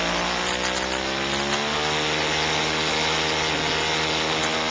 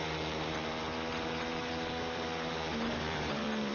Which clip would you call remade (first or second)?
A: second